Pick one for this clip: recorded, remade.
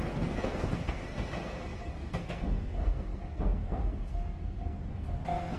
remade